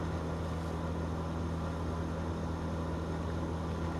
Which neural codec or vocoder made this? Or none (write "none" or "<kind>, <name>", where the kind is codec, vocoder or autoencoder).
none